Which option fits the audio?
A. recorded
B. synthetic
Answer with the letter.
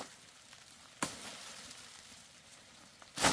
A